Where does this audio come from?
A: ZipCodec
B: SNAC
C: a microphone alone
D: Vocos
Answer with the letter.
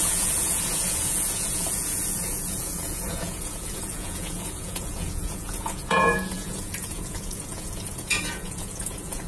D